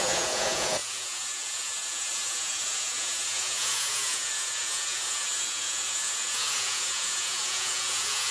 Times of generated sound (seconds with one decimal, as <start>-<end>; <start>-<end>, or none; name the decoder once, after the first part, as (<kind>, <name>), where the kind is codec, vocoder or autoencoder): 0.0-8.3 (vocoder, Vocos)